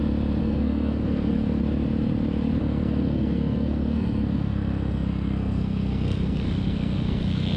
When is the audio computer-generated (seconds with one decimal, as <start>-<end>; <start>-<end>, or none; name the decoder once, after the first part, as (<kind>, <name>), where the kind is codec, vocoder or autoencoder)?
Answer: 0.4-1.6 (codec, SNAC); 2.6-7.6